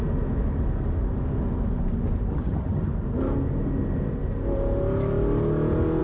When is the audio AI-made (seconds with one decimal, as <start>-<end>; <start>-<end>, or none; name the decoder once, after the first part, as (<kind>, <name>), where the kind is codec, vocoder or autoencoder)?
2.3-2.9 (vocoder, HiFi-GAN)

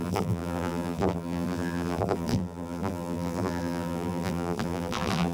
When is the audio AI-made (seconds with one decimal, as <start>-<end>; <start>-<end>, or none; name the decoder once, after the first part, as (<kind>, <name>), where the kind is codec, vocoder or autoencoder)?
0.0-5.3 (vocoder, BigVGAN v2)

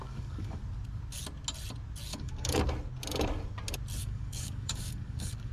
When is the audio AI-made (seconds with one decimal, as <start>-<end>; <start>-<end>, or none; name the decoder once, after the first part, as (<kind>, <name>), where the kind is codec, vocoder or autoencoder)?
0.0-0.6 (codec, DAC); 2.1-2.6; 4.0-5.5

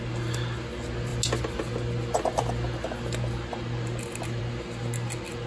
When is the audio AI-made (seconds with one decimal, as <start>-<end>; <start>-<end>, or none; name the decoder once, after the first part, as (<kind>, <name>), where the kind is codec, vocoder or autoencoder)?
none

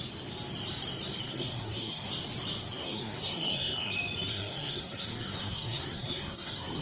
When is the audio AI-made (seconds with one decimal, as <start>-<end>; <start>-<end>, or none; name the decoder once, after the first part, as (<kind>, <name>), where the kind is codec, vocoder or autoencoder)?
1.2-2.1 (codec, SNAC); 2.8-3.9; 4.3-6.8

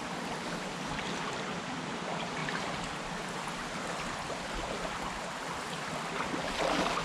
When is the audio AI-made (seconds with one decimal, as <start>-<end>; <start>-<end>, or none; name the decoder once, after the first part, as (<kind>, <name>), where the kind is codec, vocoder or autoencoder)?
none